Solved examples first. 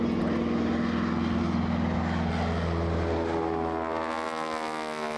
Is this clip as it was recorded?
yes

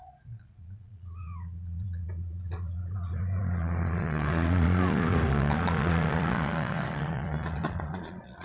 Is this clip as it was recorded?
no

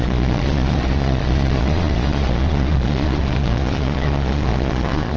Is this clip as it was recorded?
no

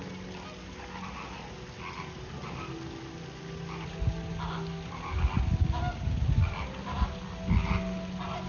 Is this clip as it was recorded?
yes